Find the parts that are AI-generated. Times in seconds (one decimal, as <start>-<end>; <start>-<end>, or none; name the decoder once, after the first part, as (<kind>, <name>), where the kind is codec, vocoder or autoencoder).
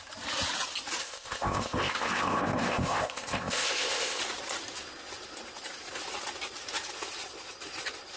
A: 1.0-4.2 (codec, ZipCodec)